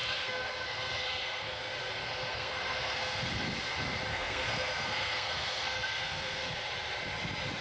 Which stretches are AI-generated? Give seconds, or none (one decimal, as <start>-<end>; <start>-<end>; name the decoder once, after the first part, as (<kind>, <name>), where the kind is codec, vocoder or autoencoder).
0.0-1.7 (codec, SNAC); 2.3-3.3; 4.1-6.5